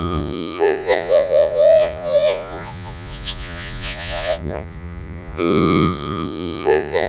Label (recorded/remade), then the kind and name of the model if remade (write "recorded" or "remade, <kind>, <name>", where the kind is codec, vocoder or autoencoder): remade, vocoder, Vocos